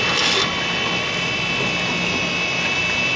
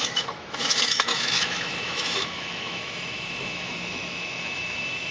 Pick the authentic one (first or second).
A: first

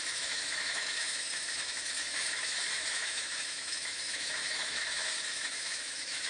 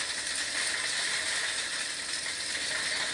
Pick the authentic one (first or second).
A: second